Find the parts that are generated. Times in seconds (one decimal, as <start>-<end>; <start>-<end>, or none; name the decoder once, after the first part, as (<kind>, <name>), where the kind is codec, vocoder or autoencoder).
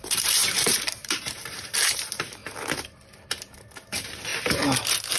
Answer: 0.0-2.4 (vocoder, BigVGAN v2); 3.3-4.3; 4.8-5.2